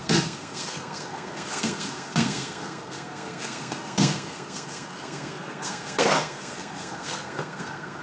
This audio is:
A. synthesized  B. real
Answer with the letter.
A